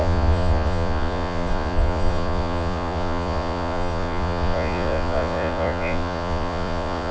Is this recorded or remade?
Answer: remade